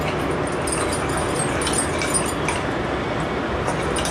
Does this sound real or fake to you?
real